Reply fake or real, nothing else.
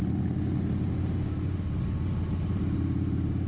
real